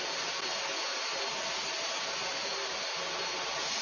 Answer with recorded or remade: recorded